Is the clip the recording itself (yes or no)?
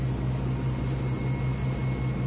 yes